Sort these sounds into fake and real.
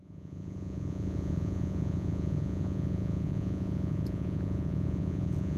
fake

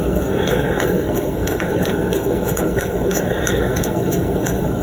fake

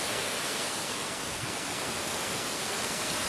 fake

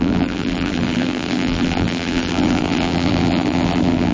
fake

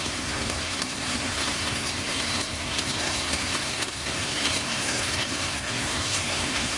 fake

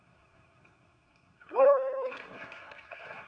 fake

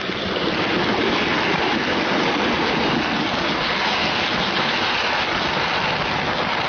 real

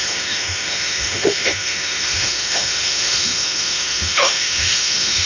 fake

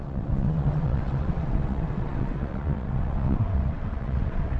fake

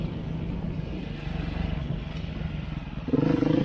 real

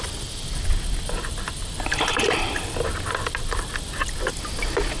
real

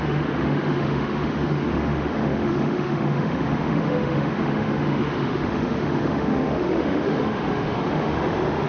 fake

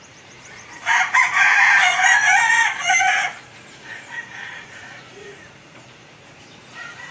fake